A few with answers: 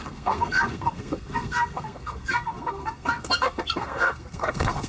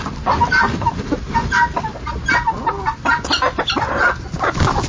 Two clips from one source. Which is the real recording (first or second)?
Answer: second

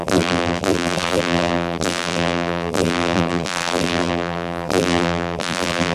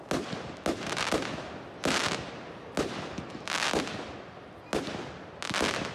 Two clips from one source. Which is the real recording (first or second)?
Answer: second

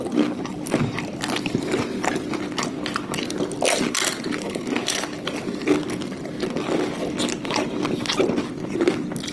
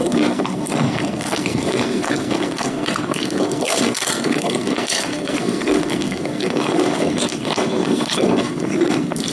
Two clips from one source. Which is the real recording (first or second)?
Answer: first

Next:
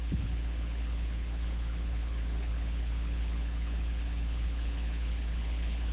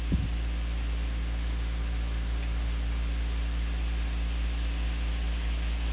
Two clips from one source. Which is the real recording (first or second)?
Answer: second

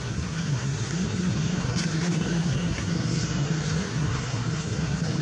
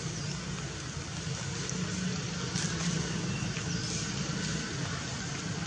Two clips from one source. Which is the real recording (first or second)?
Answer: second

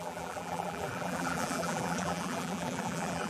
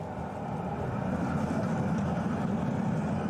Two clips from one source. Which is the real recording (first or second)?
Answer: second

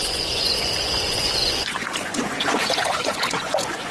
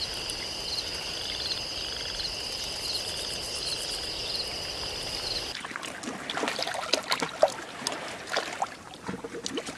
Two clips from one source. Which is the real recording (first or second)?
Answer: second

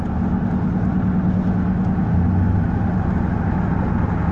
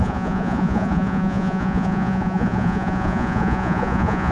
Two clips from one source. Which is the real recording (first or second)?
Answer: first